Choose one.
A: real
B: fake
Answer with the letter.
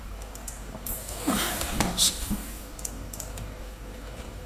B